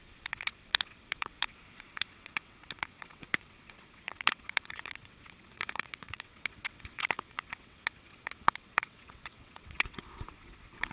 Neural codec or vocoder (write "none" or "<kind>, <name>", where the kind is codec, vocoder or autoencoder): vocoder, WaveNeXt